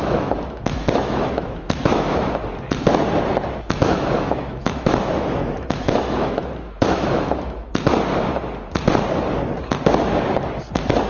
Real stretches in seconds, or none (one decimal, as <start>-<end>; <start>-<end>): 2.4-3.5; 7.7-11.1